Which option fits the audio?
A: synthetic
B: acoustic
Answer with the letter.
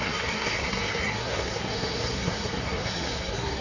A